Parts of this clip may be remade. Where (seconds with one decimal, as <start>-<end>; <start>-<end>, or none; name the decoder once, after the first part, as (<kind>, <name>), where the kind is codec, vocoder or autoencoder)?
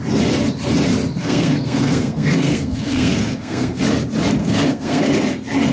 1.2-3.8 (codec, SNAC); 4.4-5.1